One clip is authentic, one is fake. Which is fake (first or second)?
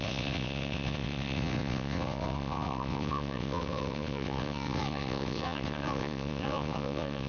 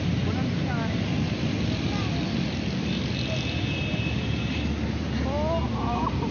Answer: first